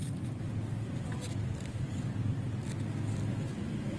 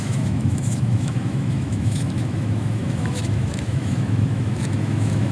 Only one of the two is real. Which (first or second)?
first